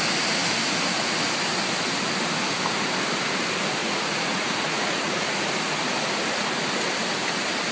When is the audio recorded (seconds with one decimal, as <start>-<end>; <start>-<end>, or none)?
0.0-3.8; 5.5-7.7